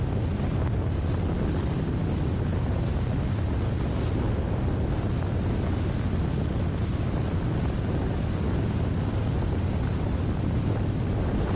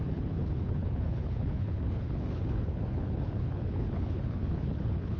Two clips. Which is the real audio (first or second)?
first